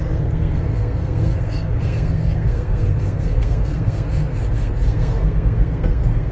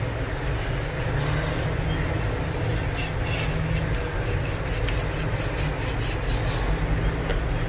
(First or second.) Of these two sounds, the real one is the second